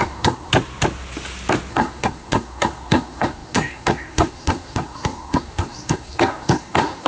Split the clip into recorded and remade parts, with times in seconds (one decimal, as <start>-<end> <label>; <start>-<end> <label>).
0.0-0.5 remade; 0.5-1.7 recorded; 1.7-7.1 remade